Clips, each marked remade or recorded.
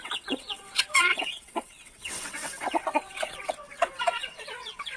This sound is remade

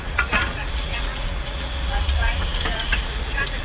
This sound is remade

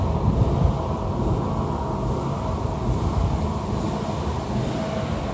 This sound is recorded